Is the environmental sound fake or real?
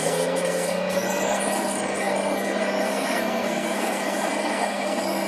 fake